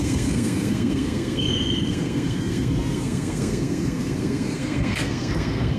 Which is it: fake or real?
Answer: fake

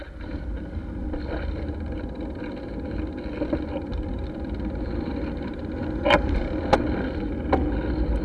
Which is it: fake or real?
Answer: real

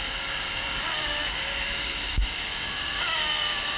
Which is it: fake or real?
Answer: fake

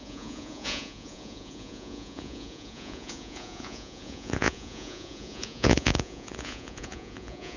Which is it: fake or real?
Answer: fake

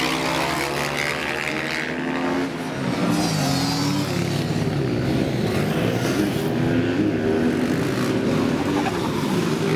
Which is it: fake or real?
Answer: real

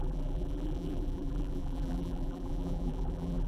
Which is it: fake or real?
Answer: fake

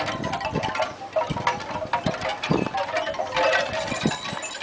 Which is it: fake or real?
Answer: real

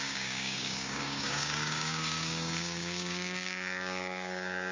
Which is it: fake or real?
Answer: fake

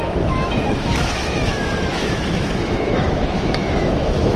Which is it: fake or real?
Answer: fake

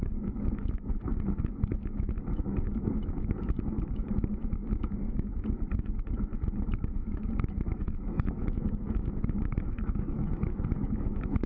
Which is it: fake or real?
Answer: fake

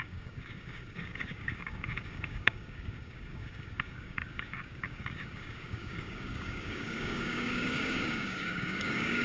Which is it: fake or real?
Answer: fake